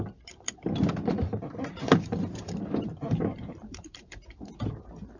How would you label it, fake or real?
fake